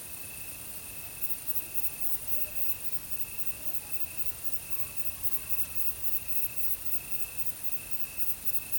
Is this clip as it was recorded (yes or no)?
no